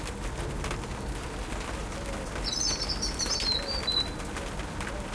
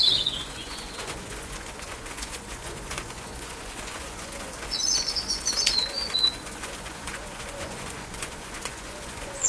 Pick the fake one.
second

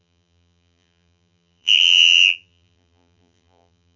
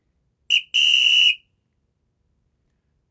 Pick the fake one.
first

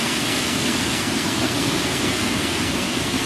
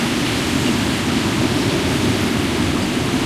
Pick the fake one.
first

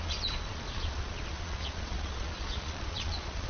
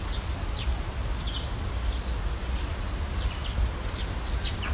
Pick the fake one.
first